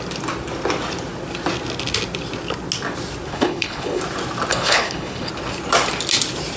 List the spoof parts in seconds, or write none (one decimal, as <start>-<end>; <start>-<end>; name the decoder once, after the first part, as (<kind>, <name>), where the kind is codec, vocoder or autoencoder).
3.3-4.0 (codec, HILCodec); 4.5-5.3